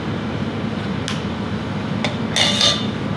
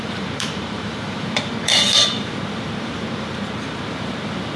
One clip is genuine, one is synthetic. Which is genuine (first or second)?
first